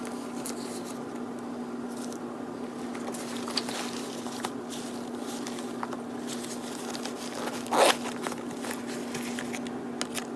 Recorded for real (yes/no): yes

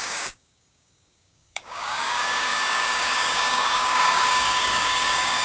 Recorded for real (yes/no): no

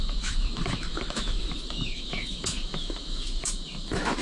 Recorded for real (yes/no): no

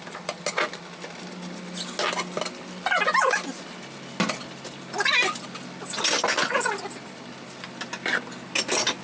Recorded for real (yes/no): yes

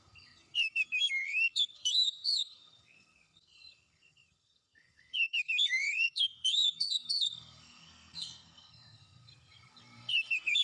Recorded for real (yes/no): no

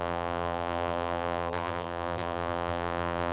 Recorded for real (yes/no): no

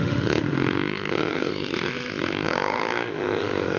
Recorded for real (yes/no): no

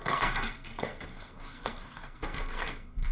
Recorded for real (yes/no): no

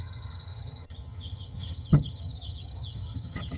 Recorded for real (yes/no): no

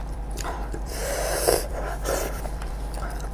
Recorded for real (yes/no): no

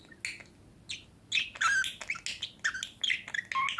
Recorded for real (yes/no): yes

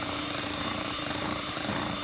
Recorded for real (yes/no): no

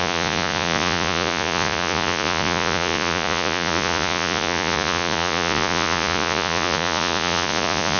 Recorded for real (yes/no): no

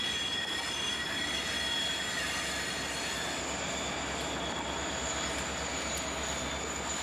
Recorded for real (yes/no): yes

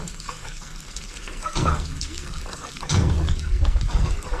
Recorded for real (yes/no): no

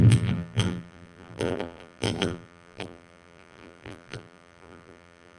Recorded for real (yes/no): no